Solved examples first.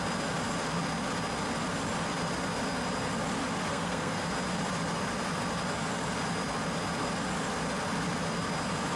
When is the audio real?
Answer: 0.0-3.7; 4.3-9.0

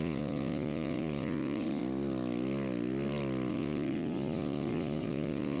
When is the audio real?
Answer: 1.8-3.5

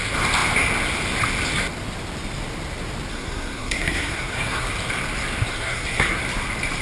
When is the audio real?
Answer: 0.0-3.1; 4.7-5.5; 6.2-6.8

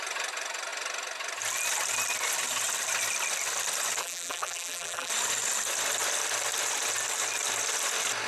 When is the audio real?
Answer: 0.0-4.0; 5.1-8.3

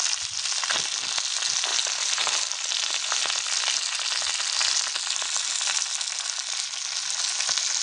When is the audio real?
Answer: 0.0-7.8

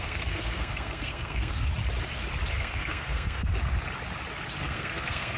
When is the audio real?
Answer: 1.7-2.5; 3.5-4.6

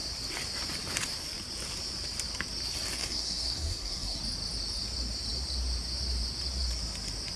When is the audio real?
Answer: 0.0-3.0; 4.2-7.4